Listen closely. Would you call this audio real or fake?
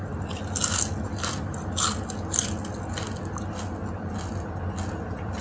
real